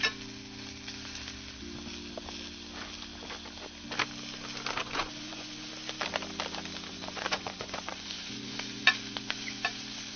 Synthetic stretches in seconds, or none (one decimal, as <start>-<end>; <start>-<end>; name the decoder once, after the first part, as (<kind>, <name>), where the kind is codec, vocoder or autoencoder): 4.8-5.7 (vocoder, Vocos); 6.9-10.2